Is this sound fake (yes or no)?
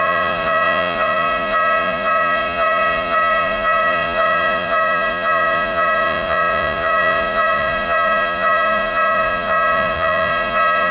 yes